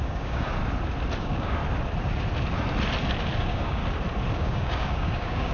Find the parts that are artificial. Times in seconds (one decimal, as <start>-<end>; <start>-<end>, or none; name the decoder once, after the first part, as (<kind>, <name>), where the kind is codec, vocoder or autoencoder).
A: 0.0-0.6 (codec, DAC); 1.2-1.6; 3.4-3.8; 4.3-5.5